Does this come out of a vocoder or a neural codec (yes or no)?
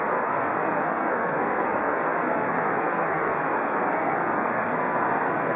yes